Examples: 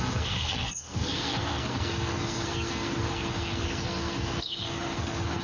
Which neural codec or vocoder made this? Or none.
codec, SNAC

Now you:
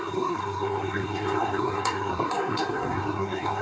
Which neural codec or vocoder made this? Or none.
codec, SNAC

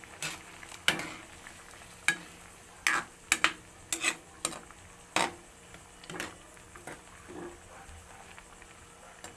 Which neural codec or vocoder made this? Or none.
none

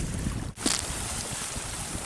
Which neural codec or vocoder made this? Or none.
none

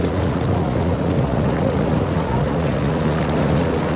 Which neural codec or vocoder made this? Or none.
vocoder, Vocos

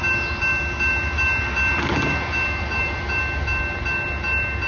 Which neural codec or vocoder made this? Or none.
none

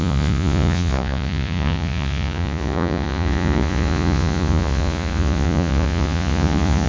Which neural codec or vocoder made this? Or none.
vocoder, Vocos